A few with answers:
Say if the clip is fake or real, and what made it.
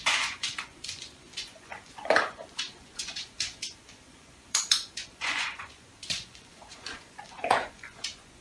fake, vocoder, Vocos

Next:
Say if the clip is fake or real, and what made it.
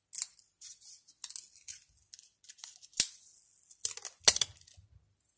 real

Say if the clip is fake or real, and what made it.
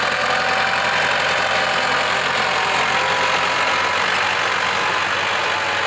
real